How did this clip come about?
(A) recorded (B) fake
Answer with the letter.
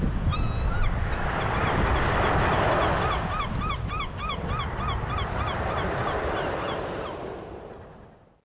A